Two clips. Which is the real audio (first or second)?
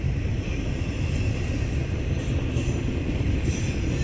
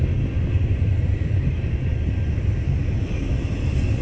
second